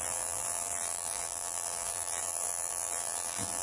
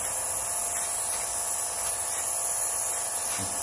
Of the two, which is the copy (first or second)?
first